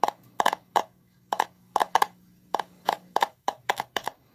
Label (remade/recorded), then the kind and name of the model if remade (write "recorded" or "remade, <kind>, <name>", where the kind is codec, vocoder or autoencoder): remade, codec, DAC